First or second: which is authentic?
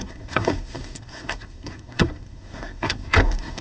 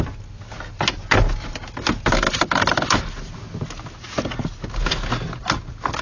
second